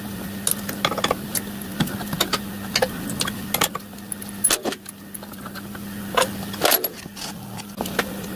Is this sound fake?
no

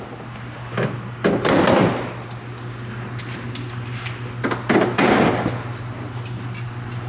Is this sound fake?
no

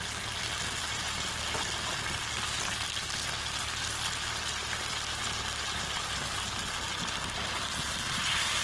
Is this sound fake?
no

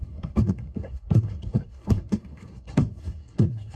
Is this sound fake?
yes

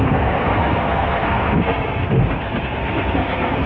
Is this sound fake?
yes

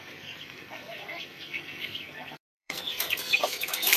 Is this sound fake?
yes